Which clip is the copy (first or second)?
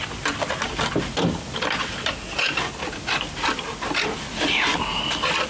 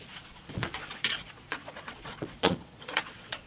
second